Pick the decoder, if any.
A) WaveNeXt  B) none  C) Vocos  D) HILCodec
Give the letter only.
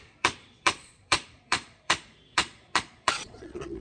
C